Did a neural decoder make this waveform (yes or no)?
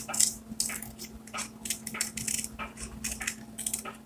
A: no